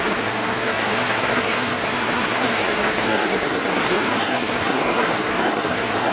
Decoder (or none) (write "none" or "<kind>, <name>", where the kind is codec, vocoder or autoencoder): codec, SNAC